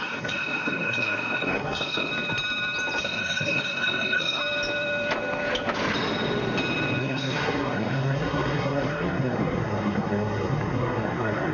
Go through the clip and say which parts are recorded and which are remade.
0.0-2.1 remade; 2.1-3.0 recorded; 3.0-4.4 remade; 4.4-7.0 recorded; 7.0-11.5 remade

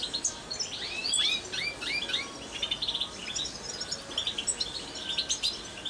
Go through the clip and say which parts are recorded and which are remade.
0.0-5.9 recorded

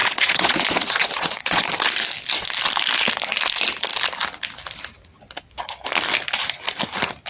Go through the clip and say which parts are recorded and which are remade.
0.0-1.7 remade; 1.7-7.3 recorded